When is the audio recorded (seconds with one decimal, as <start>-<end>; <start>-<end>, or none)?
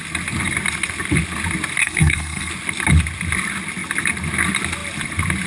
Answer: 0.0-1.8; 2.5-5.5